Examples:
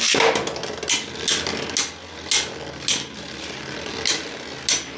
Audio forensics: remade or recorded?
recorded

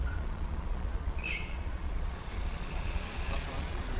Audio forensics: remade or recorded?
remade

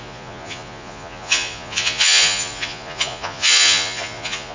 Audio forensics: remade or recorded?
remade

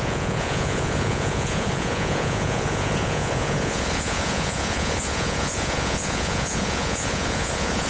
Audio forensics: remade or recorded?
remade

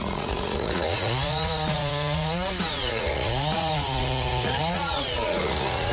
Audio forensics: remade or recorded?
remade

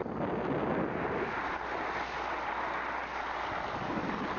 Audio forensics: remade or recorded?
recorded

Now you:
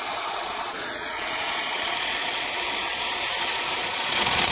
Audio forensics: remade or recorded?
remade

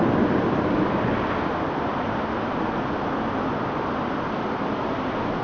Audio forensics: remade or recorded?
recorded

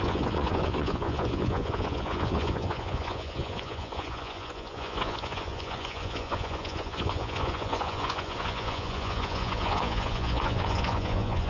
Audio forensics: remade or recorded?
remade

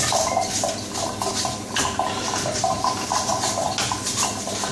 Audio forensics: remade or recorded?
recorded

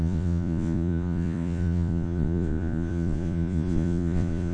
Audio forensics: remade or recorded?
remade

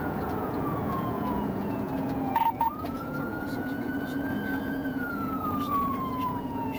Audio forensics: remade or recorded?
remade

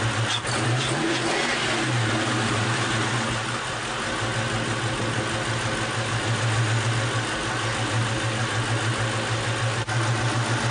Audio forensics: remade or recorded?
recorded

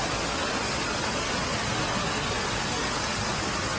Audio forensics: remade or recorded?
recorded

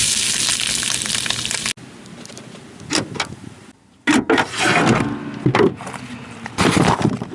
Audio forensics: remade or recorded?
recorded